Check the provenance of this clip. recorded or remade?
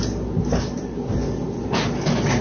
recorded